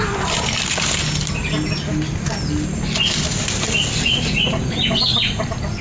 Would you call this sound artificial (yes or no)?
no